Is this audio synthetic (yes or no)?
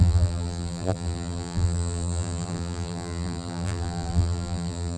yes